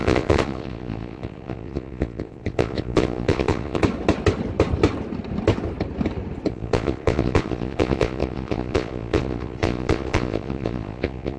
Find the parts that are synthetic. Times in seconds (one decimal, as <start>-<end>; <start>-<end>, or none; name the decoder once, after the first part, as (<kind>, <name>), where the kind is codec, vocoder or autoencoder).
0.0-3.8 (vocoder, Vocos); 6.5-11.4